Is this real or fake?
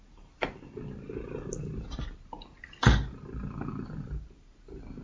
real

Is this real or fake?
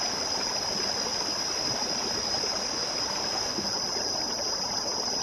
real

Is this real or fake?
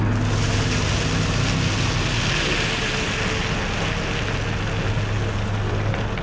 real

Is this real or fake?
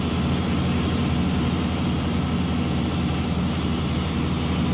real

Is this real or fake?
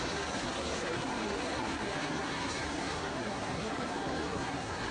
fake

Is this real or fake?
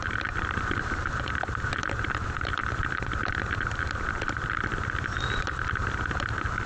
fake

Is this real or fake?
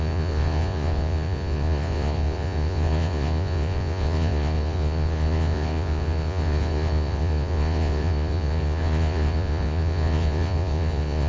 fake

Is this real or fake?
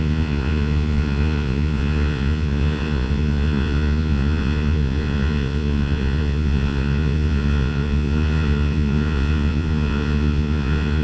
fake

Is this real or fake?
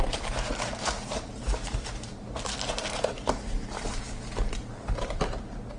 fake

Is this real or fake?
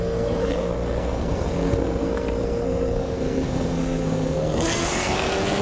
fake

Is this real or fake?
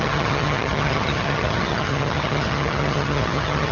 fake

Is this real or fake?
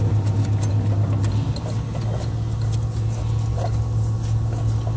real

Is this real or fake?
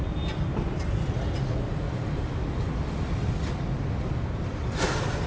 real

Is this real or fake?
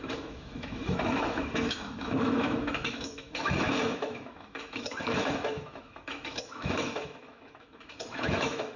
fake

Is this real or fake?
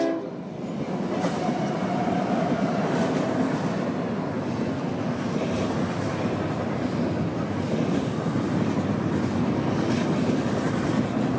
real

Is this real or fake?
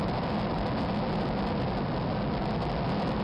real